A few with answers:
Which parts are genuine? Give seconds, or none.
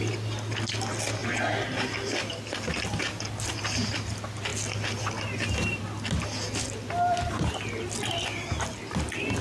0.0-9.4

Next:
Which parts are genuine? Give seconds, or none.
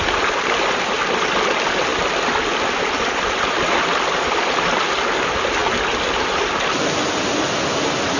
0.0-8.2